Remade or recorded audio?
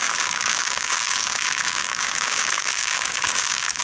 remade